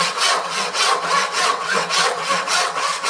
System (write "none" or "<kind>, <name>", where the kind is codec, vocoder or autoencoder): vocoder, WaveNeXt